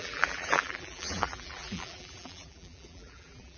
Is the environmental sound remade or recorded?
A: remade